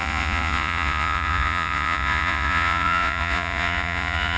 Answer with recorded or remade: remade